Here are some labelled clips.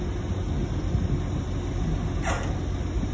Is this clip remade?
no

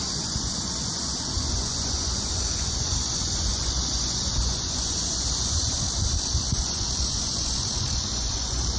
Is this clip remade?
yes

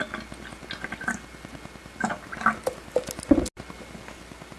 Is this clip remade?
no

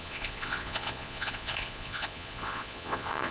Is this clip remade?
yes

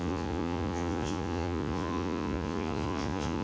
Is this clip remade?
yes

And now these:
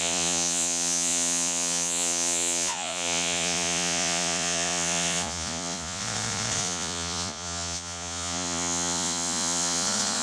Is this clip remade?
yes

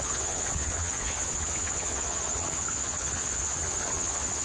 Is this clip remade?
yes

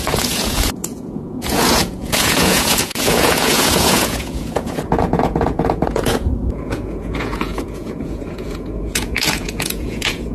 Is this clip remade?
yes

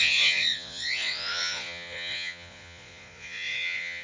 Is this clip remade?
yes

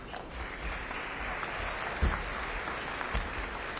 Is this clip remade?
no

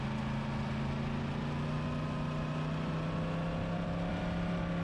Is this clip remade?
no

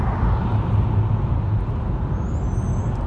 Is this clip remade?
no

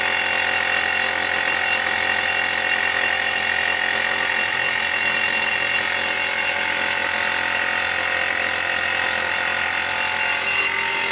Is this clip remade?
no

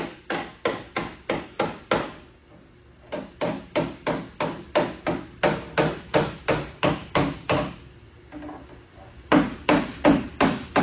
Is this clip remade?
no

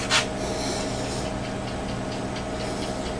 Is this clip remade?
no